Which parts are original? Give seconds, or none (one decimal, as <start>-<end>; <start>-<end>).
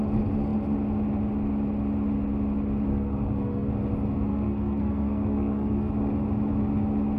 0.0-2.9; 3.7-4.3; 5.9-7.2